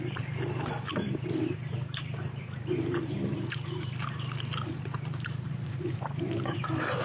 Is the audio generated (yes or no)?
yes